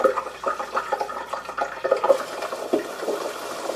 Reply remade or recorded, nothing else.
recorded